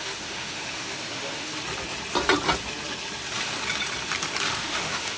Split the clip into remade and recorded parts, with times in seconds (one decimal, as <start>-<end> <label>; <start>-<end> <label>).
0.0-1.5 remade; 1.5-4.6 recorded; 4.6-5.2 remade